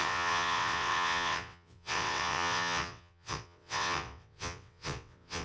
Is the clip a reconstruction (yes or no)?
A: yes